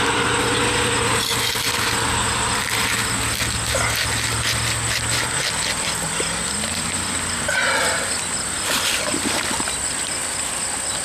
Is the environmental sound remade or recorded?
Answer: recorded